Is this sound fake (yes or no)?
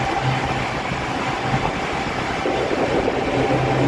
no